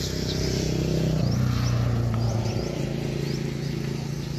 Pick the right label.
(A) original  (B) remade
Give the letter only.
A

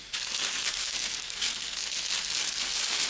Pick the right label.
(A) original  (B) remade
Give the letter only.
B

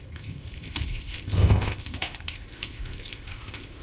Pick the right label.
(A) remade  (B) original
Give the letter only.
A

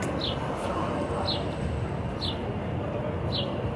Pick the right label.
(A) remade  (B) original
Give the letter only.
B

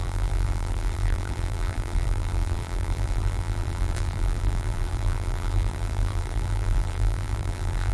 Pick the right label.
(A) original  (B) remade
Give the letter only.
B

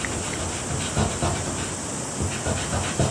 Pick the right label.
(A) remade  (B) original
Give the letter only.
B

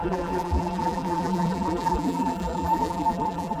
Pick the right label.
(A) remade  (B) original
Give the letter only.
A